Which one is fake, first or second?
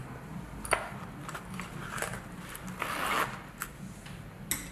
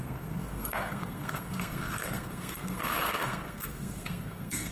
second